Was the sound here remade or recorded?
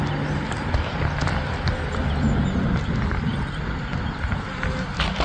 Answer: recorded